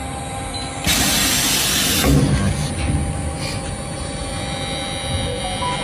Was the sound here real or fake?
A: real